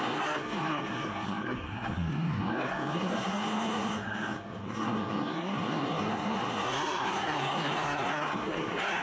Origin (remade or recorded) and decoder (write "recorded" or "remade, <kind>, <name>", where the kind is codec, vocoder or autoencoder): remade, codec, SNAC